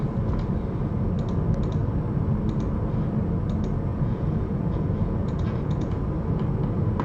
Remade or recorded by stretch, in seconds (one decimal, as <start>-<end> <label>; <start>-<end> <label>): 0.0-3.9 recorded; 3.9-5.9 remade; 5.9-7.0 recorded